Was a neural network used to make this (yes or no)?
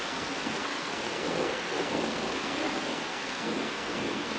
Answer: yes